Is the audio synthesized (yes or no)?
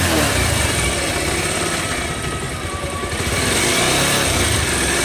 no